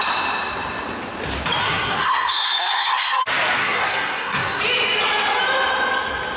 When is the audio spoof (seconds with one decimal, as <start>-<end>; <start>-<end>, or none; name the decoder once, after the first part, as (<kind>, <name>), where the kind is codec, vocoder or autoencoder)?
1.6-3.2 (codec, SNAC); 3.6-4.6